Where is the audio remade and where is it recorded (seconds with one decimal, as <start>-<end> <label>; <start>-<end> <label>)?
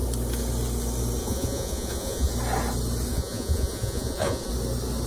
0.0-1.2 recorded; 1.2-2.3 remade; 2.3-3.1 recorded; 3.1-4.5 remade; 4.5-5.1 recorded